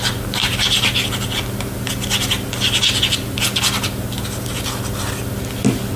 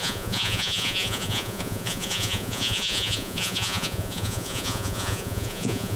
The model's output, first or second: second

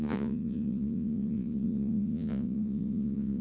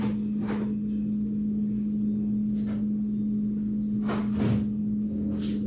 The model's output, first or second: first